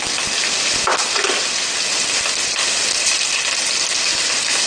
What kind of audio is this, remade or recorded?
recorded